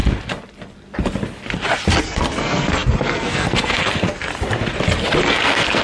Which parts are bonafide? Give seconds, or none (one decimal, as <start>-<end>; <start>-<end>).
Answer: 0.0-2.0; 4.3-5.2